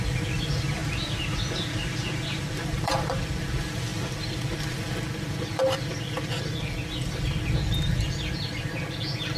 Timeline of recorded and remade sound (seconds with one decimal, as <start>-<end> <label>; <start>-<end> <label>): 0.0-0.8 remade; 0.8-2.4 recorded; 2.4-9.4 remade